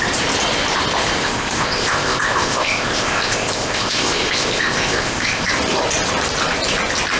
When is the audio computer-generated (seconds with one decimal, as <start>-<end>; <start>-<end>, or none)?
1.2-5.5